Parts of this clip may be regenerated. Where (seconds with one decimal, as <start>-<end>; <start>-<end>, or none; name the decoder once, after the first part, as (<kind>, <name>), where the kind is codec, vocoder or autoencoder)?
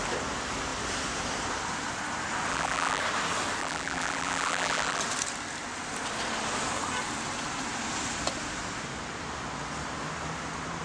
2.5-3.0 (vocoder, BigVGAN v2); 3.6-5.0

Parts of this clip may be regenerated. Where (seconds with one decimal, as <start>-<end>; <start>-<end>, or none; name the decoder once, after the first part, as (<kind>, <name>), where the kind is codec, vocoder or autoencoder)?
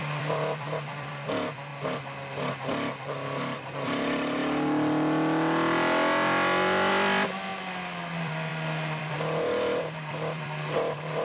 0.0-1.7 (vocoder, BigVGAN v2); 2.5-4.4; 6.9-7.5; 8.1-8.5; 9.0-11.2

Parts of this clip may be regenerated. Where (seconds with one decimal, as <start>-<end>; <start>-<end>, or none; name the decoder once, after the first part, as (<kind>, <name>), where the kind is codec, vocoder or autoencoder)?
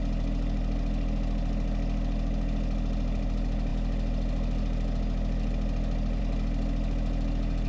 none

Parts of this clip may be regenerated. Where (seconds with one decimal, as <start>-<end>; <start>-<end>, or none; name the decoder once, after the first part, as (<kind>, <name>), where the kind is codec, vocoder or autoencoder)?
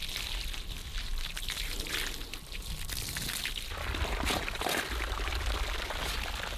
none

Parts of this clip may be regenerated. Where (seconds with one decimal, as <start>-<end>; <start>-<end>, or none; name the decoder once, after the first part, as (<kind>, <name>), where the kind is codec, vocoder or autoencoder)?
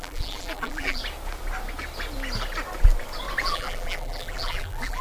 0.0-1.0 (vocoder, BigVGAN v2); 3.4-5.0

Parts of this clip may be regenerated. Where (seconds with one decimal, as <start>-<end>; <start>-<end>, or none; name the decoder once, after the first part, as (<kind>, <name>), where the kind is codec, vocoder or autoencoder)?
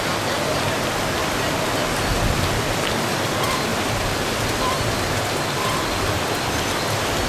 none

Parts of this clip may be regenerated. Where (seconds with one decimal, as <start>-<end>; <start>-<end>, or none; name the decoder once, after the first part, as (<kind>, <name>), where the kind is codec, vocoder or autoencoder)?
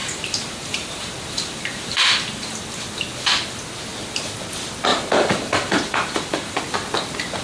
0.0-2.6 (vocoder, BigVGAN v2); 4.9-6.6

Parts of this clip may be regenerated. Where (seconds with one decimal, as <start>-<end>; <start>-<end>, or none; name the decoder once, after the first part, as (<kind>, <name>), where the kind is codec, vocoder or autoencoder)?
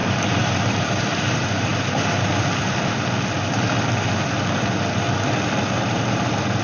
0.0-1.7 (vocoder, BigVGAN v2); 5.7-6.6